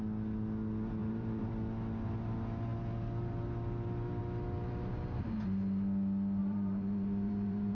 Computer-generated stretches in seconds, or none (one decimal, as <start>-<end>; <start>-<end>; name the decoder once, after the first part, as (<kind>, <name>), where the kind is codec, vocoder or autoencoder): 1.0-1.5 (vocoder, BigVGAN v2); 6.4-7.7